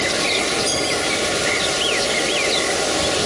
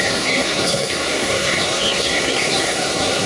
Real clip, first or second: first